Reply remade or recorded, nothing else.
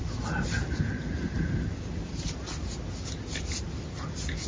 recorded